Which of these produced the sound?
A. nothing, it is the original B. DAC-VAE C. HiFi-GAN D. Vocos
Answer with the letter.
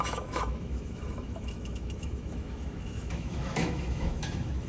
B